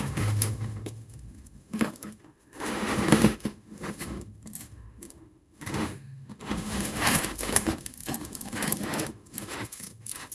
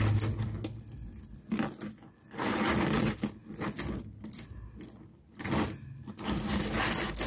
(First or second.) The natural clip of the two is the second